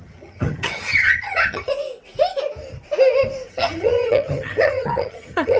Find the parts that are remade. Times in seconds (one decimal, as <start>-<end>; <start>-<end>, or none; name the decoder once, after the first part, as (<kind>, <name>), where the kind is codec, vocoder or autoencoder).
0.0-1.7 (vocoder, HiFi-GAN); 3.5-5.6